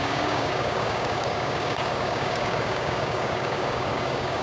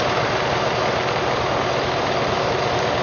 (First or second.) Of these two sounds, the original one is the second